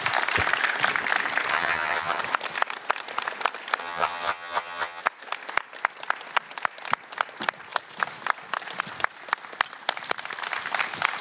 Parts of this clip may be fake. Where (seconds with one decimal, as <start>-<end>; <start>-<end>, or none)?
1.5-2.2; 3.8-5.0